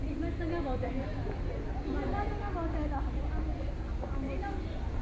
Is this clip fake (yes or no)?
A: no